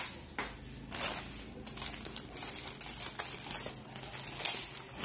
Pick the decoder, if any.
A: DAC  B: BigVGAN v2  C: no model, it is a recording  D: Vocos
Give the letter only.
C